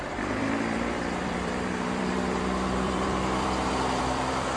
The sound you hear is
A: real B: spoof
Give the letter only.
B